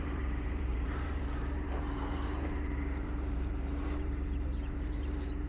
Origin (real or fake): fake